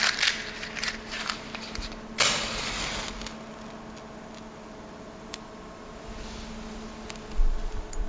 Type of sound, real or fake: real